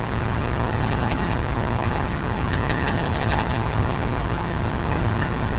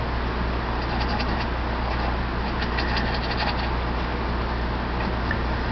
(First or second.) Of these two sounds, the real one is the second